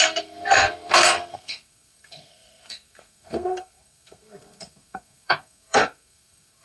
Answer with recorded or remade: remade